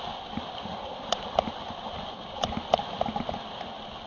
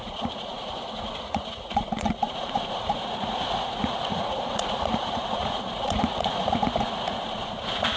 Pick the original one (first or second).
first